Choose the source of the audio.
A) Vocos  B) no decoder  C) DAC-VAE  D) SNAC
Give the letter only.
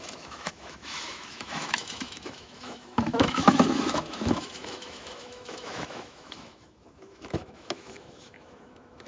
C